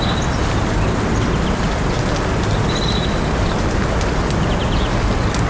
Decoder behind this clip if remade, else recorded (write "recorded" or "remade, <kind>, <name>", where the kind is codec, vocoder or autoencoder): recorded